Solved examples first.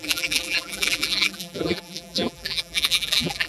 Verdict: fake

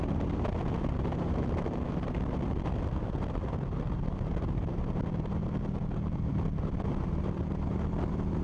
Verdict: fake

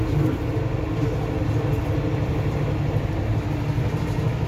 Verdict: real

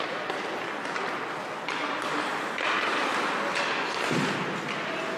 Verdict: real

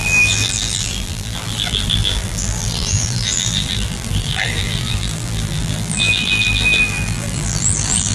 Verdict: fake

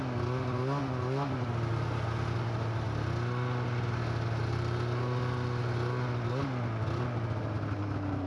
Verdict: real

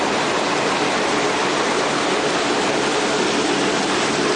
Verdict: real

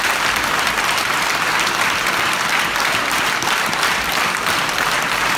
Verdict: fake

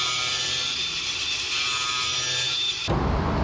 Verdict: fake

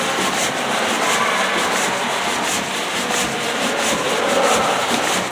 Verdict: real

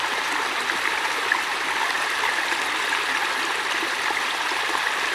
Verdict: real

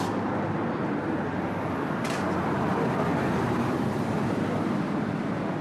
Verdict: fake